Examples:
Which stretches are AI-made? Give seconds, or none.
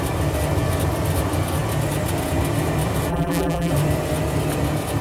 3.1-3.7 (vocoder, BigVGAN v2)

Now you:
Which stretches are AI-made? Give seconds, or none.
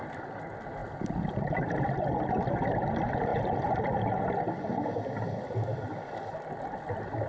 3.3-6.2 (vocoder, BigVGAN v2)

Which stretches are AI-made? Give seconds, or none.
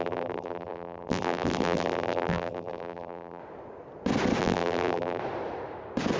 0.0-3.4 (vocoder, BigVGAN v2); 4.4-5.2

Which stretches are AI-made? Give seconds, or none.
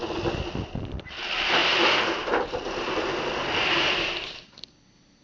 0.0-5.2 (vocoder, BigVGAN v2)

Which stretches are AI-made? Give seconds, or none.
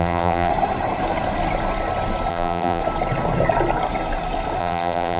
0.0-0.5 (vocoder, BigVGAN v2); 2.3-2.8; 4.6-5.2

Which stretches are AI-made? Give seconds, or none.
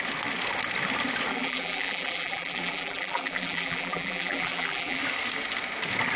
1.3-5.0 (vocoder, BigVGAN v2)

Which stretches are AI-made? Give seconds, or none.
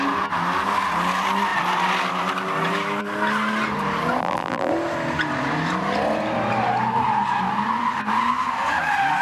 4.2-4.7 (vocoder, BigVGAN v2)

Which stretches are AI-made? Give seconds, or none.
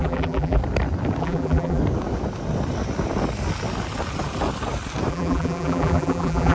0.0-0.6 (vocoder, BigVGAN v2); 1.2-1.8; 5.1-6.5